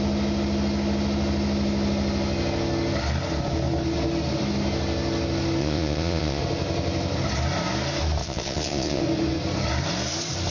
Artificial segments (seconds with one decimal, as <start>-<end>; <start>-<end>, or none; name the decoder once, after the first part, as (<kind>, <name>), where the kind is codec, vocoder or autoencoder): 5.6-6.4 (vocoder, Vocos); 8.2-9.0